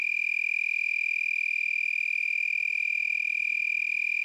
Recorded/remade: recorded